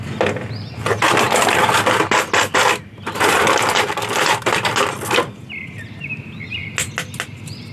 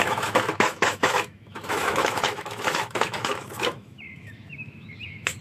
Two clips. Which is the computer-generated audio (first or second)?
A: second